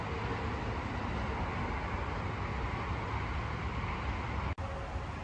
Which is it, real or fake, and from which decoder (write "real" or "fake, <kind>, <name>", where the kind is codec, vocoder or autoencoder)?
real